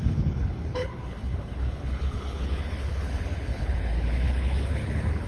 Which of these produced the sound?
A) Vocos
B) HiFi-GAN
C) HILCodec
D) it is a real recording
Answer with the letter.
C